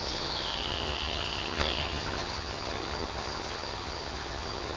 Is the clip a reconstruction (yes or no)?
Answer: yes